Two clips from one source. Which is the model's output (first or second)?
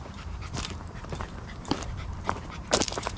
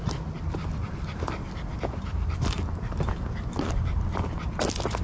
first